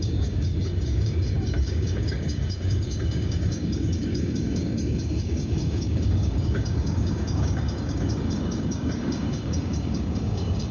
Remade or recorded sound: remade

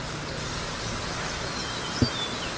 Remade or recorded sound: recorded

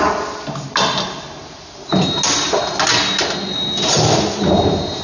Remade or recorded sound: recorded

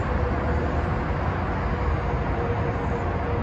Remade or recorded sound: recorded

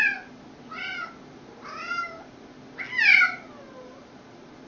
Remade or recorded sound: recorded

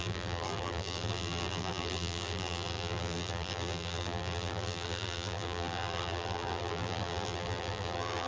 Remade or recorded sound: remade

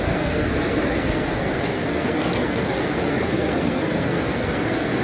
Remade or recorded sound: remade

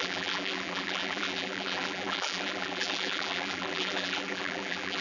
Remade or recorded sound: remade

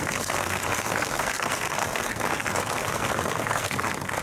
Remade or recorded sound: remade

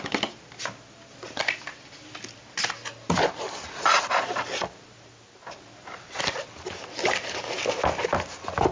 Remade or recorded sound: recorded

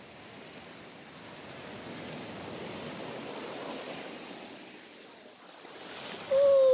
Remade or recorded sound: recorded